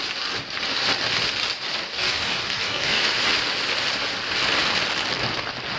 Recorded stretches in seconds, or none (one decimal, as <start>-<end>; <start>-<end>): 0.0-1.9; 3.0-5.8